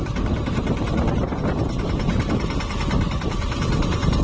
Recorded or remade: recorded